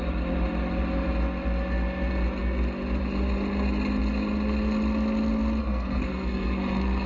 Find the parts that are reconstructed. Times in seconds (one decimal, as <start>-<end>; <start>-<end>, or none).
5.6-7.1